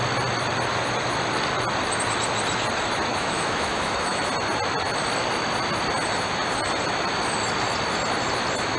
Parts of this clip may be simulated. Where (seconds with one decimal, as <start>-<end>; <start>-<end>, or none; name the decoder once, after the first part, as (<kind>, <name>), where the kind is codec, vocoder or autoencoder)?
3.1-4.2 (autoencoder, DAC-VAE)